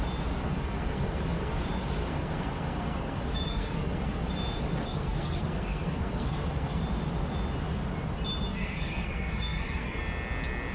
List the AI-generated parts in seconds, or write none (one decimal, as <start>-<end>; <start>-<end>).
0.4-1.6; 2.0-4.3; 4.8-6.8; 8.5-10.0